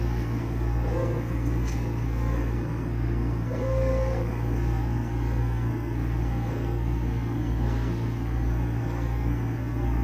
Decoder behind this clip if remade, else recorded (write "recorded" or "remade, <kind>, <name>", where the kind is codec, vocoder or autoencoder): remade, codec, SNAC